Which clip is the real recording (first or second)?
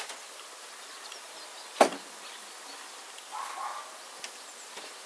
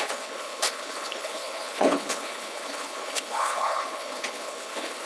first